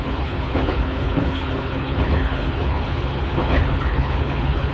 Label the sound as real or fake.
fake